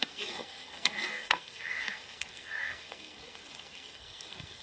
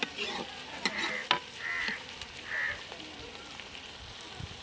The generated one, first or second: first